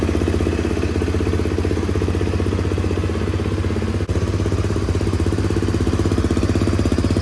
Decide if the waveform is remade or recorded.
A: recorded